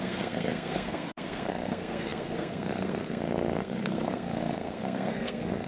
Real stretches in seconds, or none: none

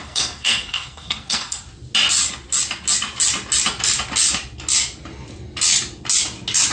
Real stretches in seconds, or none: 1.6-6.7

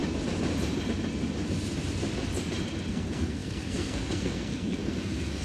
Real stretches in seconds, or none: 0.0-2.9